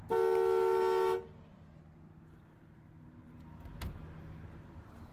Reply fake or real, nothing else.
real